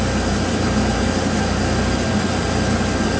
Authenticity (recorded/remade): recorded